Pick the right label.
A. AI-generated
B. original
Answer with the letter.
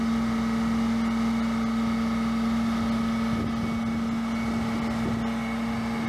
B